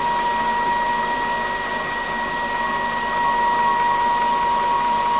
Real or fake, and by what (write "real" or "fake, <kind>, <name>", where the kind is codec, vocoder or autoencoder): real